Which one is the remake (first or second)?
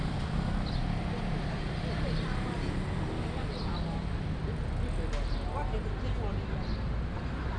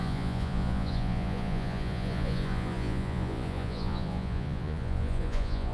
second